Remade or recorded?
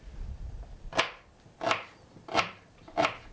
recorded